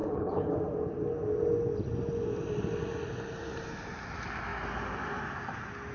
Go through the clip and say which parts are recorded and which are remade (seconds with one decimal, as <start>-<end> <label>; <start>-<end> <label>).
0.0-0.5 remade; 0.5-5.9 recorded